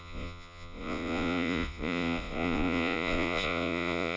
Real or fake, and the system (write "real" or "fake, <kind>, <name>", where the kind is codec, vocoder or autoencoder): fake, vocoder, Vocos